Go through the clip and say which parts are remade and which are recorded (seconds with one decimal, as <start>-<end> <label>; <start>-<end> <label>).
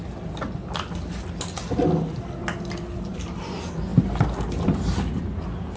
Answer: 0.0-5.8 recorded